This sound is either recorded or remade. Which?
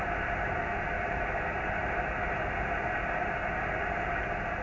recorded